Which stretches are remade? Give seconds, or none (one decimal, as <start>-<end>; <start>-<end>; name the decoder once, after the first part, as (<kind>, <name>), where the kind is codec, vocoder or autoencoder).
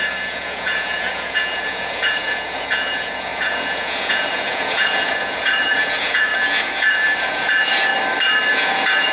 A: 0.0-7.9 (vocoder, Vocos); 8.5-9.1